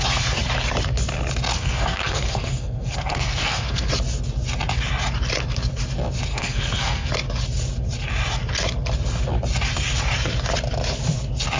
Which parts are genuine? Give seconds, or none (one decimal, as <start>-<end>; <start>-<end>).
0.0-1.5; 3.9-6.3; 7.1-11.6